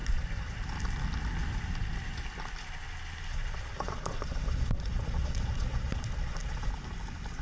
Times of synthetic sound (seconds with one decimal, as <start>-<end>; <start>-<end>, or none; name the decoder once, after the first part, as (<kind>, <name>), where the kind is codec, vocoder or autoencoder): 0.0-0.6 (vocoder, Vocos); 3.3-6.7